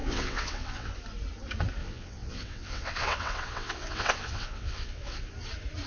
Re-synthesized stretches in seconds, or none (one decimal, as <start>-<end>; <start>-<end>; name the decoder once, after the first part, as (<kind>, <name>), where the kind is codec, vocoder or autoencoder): 0.0-0.9 (vocoder, WaveNeXt); 1.8-5.3